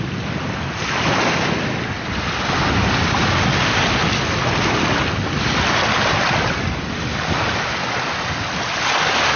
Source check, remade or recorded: recorded